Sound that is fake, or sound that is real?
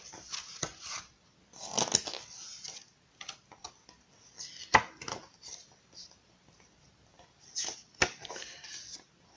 real